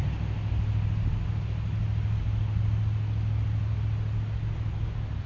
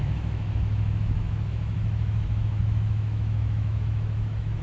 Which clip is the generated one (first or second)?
second